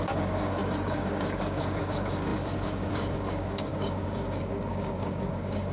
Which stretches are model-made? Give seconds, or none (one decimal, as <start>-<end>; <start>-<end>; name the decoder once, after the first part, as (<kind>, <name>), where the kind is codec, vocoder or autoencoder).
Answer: 0.0-5.7 (codec, DAC)